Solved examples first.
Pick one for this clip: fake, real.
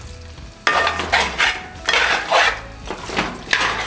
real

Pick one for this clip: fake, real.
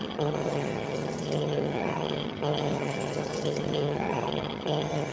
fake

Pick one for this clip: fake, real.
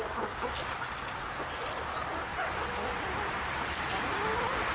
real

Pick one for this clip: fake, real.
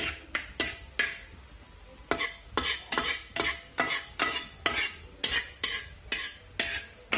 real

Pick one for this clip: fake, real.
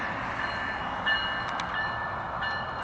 real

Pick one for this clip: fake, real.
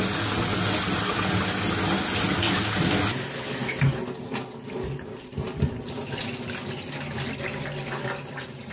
real